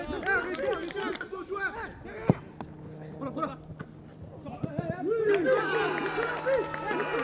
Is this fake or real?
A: real